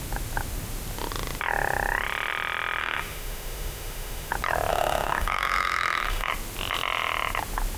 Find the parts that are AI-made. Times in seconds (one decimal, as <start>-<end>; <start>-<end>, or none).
2.8-4.3; 4.7-6.3